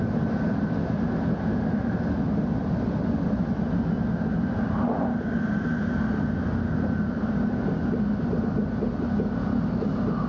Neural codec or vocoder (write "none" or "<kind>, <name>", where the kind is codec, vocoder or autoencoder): none